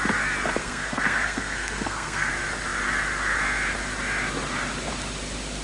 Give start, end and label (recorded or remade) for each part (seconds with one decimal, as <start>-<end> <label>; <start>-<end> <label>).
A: 0.0-0.6 recorded; 0.6-2.3 remade; 2.3-5.6 recorded